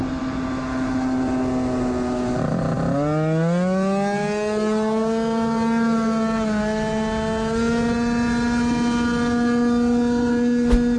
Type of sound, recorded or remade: recorded